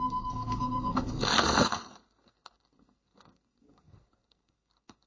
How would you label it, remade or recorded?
remade